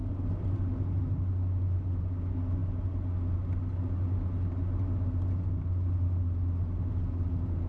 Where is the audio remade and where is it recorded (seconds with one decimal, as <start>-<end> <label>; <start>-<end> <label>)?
0.0-7.7 recorded